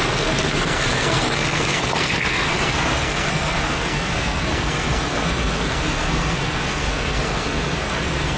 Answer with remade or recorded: remade